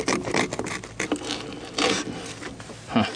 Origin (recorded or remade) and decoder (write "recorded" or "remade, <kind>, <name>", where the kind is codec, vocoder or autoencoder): recorded